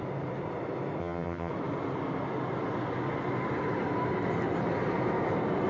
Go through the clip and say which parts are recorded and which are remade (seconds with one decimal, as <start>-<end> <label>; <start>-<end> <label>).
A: 0.0-1.0 recorded; 1.0-1.5 remade; 1.5-5.7 recorded